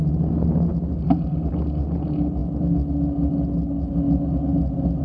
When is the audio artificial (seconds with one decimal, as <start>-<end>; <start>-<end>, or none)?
none

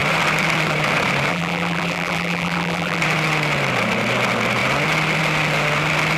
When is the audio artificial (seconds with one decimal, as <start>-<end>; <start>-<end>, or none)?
1.3-3.0

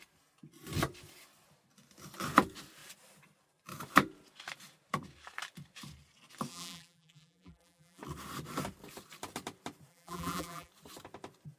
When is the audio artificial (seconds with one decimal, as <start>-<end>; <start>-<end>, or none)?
6.5-8.0; 9.9-10.7

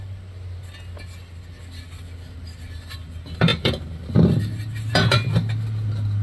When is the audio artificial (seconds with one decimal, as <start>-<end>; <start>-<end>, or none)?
none